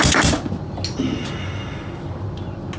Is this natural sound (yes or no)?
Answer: yes